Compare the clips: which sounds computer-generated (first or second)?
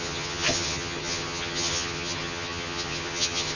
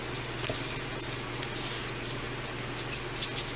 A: first